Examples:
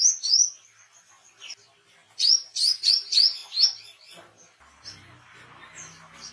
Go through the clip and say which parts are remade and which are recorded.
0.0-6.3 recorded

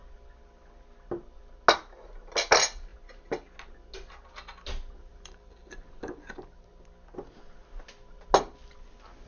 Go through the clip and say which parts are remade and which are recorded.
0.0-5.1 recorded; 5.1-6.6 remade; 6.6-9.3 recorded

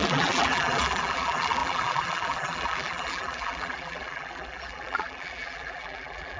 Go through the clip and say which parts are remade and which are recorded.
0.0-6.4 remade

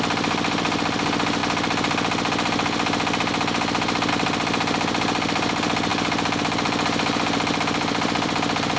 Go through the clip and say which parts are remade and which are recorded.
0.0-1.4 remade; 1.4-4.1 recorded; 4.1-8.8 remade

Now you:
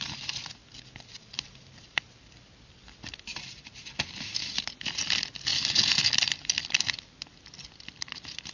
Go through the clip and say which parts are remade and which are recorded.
0.0-8.5 recorded